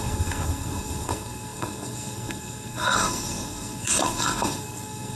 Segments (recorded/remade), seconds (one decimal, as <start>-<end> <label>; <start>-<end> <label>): 0.0-5.2 remade

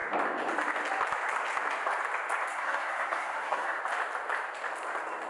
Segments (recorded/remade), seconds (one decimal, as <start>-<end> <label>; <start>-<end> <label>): 0.0-2.5 recorded; 2.5-3.8 remade; 3.8-5.3 recorded